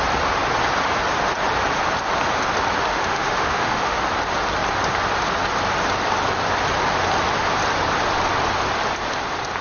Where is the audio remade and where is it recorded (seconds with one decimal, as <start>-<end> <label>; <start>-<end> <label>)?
0.0-2.9 recorded; 2.9-4.0 remade; 4.0-9.6 recorded